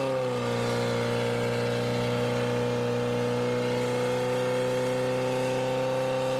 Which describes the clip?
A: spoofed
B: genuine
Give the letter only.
B